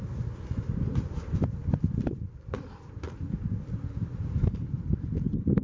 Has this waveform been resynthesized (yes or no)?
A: yes